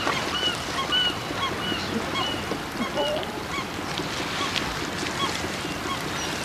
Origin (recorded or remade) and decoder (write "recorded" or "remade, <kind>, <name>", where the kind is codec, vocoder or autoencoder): recorded